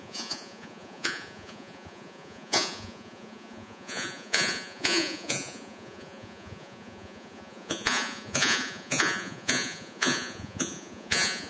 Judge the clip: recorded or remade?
remade